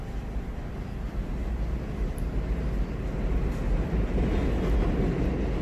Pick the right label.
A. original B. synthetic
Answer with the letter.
A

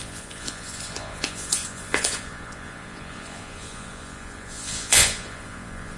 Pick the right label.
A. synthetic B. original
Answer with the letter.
A